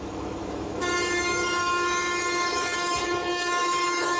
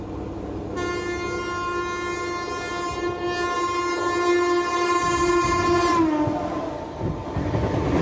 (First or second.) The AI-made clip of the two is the first